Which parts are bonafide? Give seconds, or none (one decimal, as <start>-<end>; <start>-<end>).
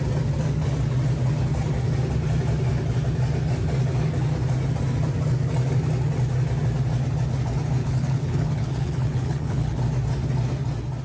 0.0-7.8; 9.8-11.0